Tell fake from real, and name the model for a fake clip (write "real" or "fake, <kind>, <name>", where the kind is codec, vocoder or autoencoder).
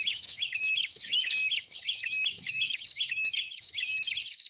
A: fake, autoencoder, DAC-VAE